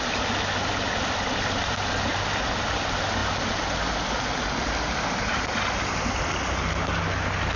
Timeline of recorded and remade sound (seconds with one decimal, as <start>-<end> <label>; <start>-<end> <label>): 0.0-7.6 recorded